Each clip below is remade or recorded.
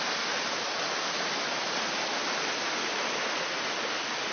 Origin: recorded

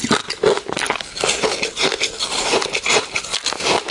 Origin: recorded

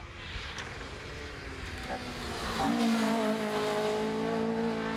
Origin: recorded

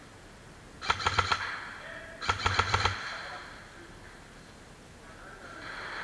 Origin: recorded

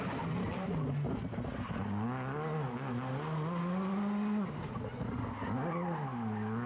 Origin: recorded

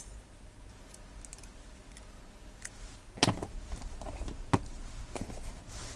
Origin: recorded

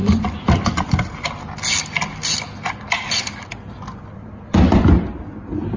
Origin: recorded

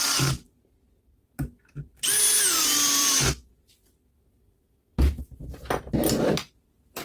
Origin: recorded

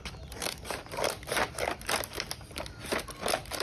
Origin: remade